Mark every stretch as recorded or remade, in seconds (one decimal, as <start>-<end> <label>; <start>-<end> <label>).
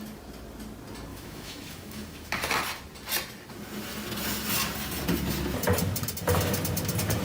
0.0-1.1 recorded; 1.1-2.3 remade; 2.3-7.2 recorded